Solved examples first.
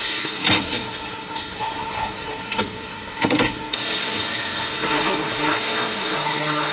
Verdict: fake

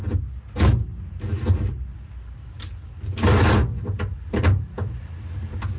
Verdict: real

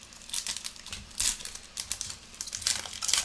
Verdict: real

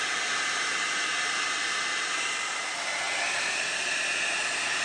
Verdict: real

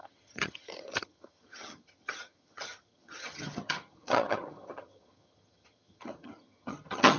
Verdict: fake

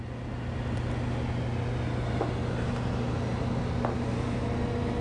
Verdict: real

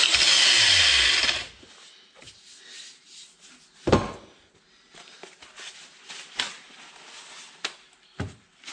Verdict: real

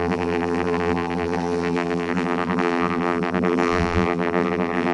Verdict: fake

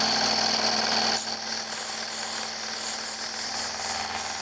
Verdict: real